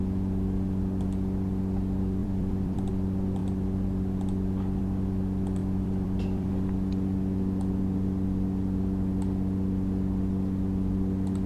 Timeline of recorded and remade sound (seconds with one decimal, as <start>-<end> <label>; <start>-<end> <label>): 0.0-2.2 recorded; 2.2-2.9 remade; 2.9-5.6 recorded; 5.6-6.5 remade; 6.5-11.5 recorded